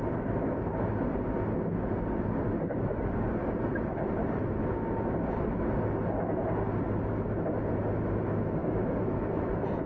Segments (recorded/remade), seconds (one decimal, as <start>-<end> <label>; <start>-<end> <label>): 0.0-8.6 recorded; 8.6-9.5 remade; 9.5-9.9 recorded

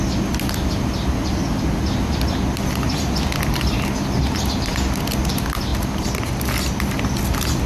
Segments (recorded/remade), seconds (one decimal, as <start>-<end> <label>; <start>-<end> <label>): 0.0-7.7 recorded

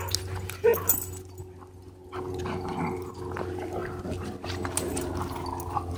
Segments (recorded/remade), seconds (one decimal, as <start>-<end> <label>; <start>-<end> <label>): 0.0-6.0 recorded